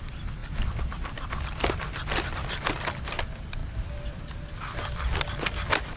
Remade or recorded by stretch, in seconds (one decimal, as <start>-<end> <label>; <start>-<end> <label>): 0.0-6.0 recorded